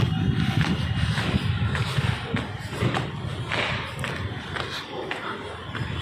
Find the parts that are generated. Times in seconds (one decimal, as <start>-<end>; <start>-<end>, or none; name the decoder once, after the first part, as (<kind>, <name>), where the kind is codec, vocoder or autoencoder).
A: none